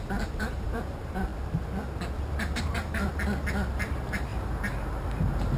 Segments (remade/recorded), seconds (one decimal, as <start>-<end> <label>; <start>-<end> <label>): 0.0-1.3 remade; 1.3-2.6 recorded; 2.6-3.1 remade; 3.1-3.7 recorded; 3.7-5.6 remade